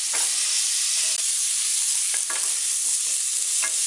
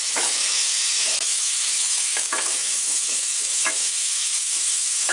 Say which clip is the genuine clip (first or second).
first